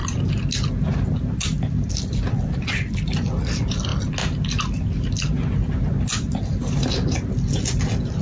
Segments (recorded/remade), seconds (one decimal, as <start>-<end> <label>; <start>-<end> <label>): 0.0-8.2 recorded